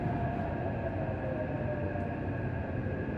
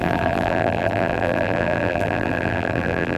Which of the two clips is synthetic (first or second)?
second